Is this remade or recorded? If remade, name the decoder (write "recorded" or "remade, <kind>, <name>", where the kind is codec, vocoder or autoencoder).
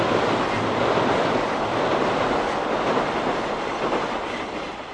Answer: recorded